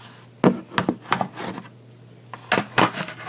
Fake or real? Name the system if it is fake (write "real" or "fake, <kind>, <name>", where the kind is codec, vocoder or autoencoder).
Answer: real